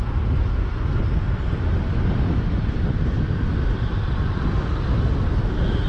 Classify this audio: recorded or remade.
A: recorded